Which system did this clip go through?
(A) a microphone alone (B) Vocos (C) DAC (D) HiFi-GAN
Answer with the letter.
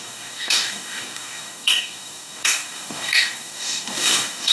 C